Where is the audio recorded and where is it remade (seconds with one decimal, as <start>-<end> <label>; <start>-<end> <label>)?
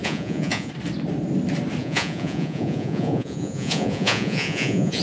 0.0-0.7 remade; 0.7-1.8 recorded; 1.8-5.0 remade